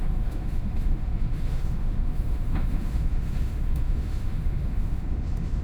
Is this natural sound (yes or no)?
no